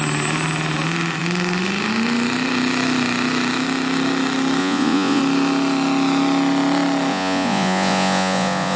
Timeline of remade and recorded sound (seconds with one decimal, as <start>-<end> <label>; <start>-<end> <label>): 0.0-4.6 recorded; 4.6-5.2 remade; 5.2-7.1 recorded; 7.1-8.8 remade